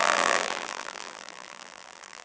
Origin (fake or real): fake